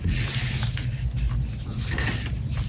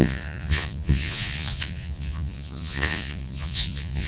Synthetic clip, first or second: second